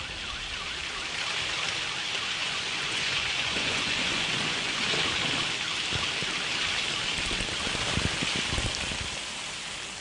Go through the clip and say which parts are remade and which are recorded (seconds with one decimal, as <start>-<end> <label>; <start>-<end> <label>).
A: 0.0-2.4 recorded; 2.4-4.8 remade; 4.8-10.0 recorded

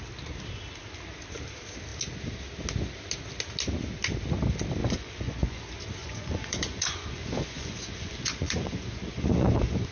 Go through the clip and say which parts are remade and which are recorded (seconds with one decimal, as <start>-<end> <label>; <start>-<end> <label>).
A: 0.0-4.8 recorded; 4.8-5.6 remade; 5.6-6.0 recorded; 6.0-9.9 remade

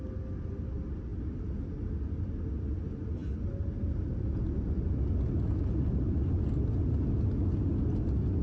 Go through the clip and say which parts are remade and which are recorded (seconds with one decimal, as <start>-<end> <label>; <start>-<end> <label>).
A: 0.0-8.4 recorded